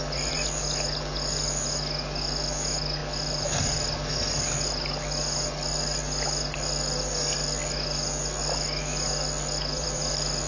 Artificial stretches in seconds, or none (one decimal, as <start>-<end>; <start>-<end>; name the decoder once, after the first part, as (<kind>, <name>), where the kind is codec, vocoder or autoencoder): none